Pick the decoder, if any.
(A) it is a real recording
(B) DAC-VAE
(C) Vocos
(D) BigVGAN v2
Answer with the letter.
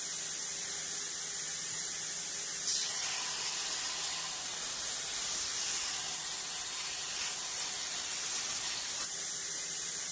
A